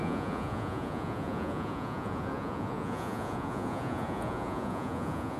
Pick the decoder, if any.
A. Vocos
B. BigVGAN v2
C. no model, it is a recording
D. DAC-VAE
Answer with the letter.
A